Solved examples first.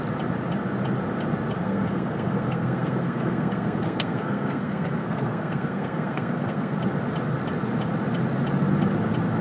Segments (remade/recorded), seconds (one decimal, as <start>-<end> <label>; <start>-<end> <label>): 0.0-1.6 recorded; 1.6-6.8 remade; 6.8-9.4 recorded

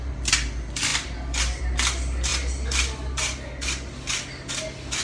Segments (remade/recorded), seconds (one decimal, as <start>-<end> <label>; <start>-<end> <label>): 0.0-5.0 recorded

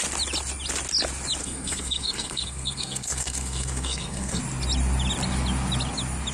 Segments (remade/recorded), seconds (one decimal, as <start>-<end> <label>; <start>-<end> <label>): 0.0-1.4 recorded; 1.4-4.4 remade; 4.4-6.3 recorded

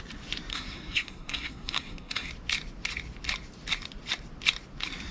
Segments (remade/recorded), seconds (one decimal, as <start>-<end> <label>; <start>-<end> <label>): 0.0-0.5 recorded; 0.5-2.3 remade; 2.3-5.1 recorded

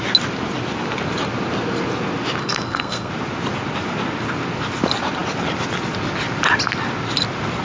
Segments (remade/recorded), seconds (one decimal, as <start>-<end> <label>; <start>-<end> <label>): 0.0-2.4 recorded; 2.4-3.1 remade; 3.1-7.6 recorded